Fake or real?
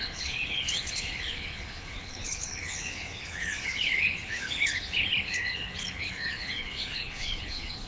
fake